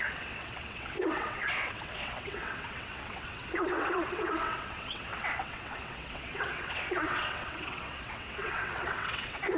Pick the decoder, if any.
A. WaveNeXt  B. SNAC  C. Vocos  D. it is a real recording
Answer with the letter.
A